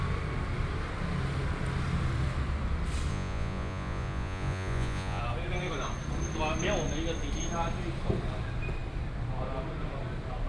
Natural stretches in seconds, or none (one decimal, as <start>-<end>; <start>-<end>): 0.0-3.1; 5.2-10.5